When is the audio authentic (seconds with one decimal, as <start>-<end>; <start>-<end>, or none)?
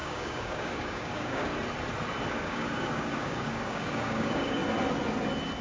1.5-2.3; 4.6-5.6